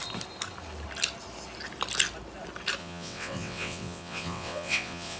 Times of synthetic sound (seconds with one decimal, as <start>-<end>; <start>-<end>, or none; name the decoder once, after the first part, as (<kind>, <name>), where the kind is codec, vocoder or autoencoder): 2.8-5.2 (vocoder, WaveNeXt)